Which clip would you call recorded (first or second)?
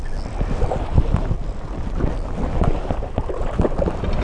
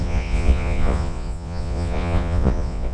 first